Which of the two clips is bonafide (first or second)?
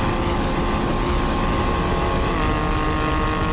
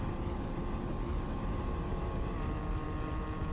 first